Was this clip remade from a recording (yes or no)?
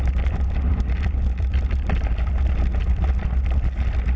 yes